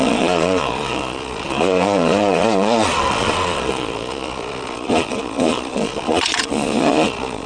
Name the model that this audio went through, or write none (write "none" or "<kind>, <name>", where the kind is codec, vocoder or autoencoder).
vocoder, Vocos